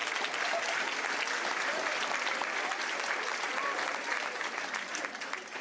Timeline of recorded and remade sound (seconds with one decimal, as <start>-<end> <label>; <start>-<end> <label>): 0.0-0.7 recorded; 0.7-5.6 remade